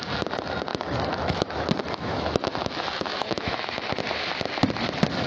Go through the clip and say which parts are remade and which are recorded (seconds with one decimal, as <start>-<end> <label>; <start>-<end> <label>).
0.0-0.7 recorded; 0.7-3.9 remade; 3.9-5.3 recorded